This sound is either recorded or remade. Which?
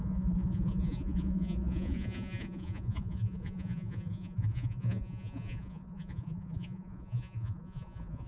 remade